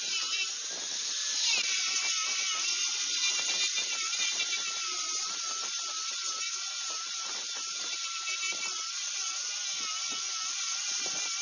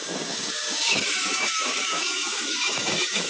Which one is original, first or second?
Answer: first